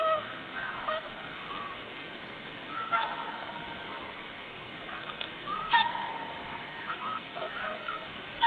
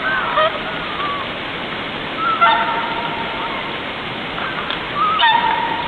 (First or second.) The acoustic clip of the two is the second